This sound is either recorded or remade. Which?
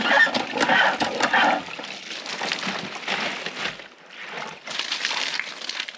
recorded